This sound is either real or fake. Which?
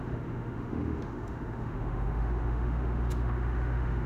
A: fake